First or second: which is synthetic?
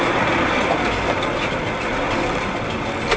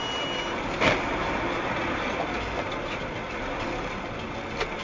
first